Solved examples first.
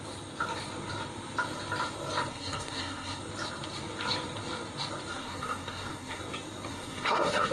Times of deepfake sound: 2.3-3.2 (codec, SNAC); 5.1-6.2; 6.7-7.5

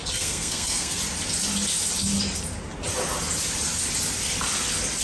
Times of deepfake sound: 0.0-1.0 (codec, SNAC)

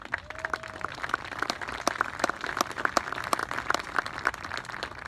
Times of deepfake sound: none

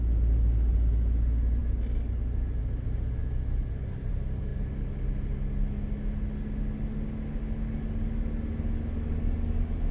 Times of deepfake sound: none

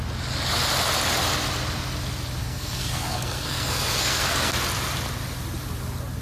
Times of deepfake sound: 2.4-4.5 (codec, SNAC)